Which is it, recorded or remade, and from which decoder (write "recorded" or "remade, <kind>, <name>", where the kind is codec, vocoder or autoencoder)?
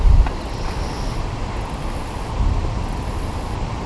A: recorded